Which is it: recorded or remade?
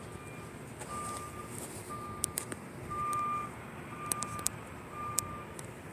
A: recorded